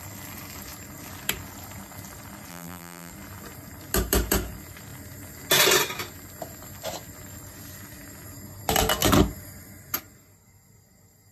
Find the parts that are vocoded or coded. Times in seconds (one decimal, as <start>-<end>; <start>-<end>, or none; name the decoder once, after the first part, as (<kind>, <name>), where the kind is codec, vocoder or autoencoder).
2.5-3.1 (vocoder, BigVGAN v2)